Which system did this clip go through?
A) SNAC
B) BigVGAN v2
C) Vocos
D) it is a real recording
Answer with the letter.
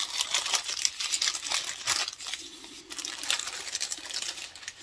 D